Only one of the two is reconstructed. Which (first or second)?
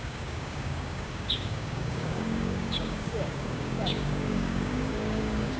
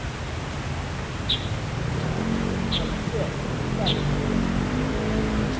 first